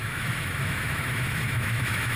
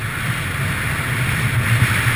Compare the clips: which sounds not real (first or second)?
first